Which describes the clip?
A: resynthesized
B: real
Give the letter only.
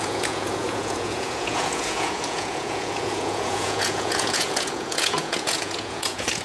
A